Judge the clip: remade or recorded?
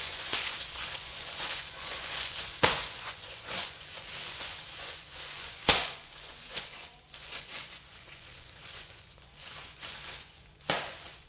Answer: remade